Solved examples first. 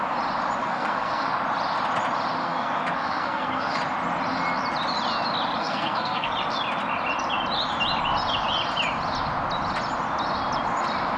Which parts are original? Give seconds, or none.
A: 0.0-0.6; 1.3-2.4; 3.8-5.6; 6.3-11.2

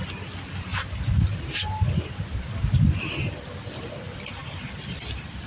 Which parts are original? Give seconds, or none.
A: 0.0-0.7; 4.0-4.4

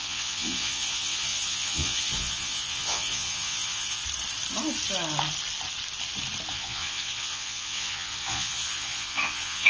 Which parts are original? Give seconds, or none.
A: 4.0-6.5